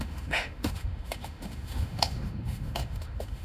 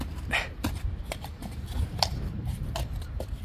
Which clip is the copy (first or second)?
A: first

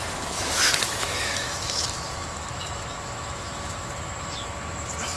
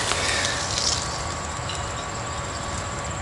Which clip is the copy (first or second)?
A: first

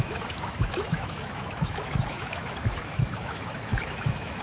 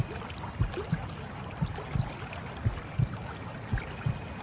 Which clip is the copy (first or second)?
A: first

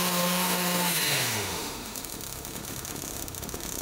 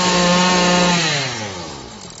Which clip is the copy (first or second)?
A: first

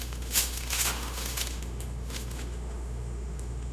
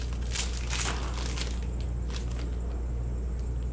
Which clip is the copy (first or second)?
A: first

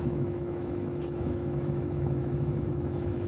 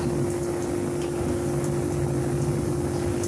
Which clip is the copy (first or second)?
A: first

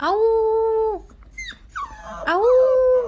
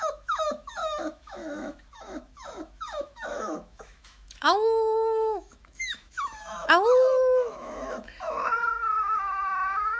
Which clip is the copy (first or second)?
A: second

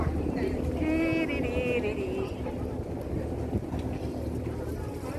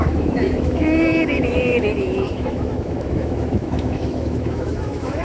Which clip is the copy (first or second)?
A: second